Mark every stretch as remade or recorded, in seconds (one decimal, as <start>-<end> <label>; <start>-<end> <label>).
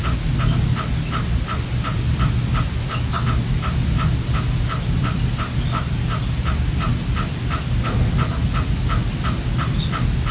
0.0-10.3 recorded